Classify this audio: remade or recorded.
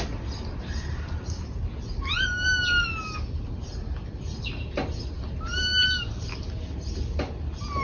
recorded